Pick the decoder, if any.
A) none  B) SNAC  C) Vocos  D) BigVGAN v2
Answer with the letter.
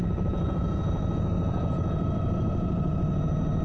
C